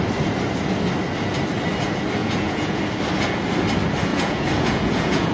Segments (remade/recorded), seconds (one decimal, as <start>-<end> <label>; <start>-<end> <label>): 0.0-2.2 recorded; 2.2-2.8 remade; 2.8-4.1 recorded; 4.1-5.3 remade